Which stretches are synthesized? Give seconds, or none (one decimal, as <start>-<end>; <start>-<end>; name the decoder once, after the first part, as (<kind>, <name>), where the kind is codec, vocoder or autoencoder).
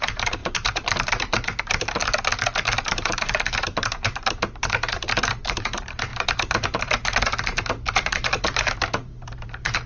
0.0-2.0 (vocoder, BigVGAN v2); 2.8-9.9